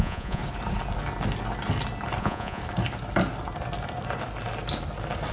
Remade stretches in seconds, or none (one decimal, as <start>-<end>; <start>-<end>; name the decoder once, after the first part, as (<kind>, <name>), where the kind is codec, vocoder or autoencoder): 0.0-0.4 (vocoder, Vocos); 2.2-2.6